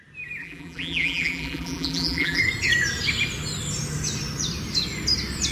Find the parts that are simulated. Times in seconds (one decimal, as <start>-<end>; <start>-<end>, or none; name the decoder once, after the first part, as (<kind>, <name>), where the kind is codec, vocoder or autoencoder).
0.4-2.4 (vocoder, BigVGAN v2)